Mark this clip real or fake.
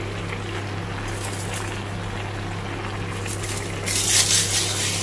real